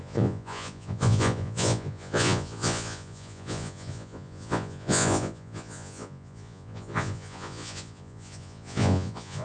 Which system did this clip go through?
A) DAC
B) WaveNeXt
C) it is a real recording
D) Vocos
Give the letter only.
D